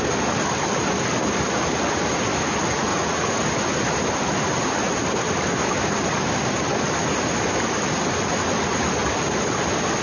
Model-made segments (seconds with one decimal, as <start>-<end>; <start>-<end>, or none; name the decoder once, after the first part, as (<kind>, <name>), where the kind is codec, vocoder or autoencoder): 2.9-3.4 (vocoder, Vocos)